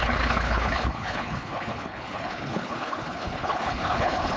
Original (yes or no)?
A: no